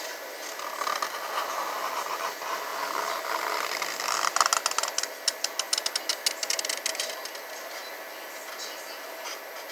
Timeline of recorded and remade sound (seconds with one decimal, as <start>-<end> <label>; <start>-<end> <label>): 0.0-9.7 recorded